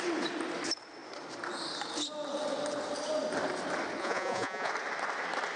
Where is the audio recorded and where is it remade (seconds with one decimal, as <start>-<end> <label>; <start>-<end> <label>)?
0.0-4.0 recorded; 4.0-4.7 remade; 4.7-5.6 recorded